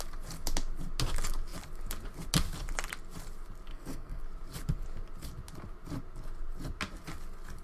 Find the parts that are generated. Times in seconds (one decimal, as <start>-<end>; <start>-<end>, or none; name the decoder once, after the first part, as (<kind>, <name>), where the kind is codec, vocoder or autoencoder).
3.7-4.2 (codec, SNAC)